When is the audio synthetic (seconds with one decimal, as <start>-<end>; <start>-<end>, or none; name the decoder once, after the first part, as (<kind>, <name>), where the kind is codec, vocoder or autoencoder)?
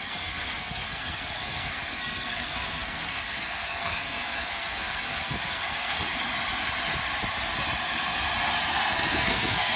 0.0-6.1 (codec, SNAC); 8.7-9.8